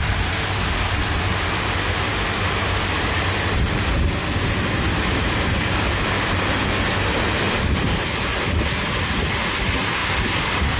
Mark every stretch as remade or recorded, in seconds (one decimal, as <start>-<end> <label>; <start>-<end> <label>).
0.0-10.8 recorded